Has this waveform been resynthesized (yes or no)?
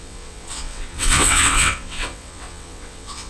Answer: yes